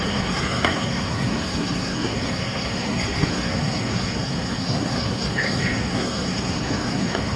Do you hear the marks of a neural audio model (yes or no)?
yes